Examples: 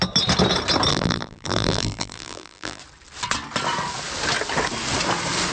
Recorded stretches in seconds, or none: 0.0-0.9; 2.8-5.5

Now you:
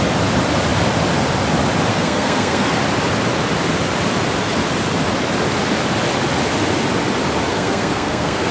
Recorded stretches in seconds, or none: 0.0-1.9; 2.7-7.5

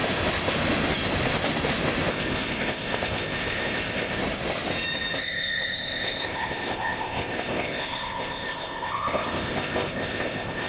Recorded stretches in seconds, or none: 0.0-2.1; 4.2-5.2

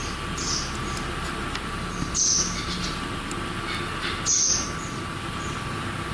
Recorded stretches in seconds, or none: 0.0-6.1

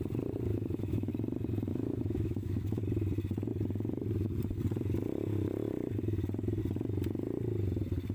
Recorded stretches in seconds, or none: 0.0-0.5; 1.1-1.7; 2.8-8.1

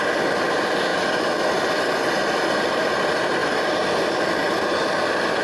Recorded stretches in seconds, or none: 0.0-5.4

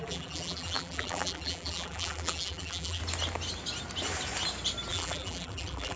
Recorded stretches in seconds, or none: 3.0-4.9

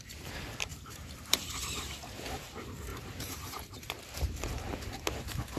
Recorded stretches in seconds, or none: 0.0-0.7; 1.5-2.9; 4.3-5.6